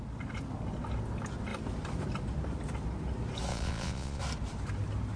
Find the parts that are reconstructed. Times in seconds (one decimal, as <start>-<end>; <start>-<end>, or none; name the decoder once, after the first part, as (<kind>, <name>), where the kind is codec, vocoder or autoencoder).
3.5-4.2 (vocoder, Vocos)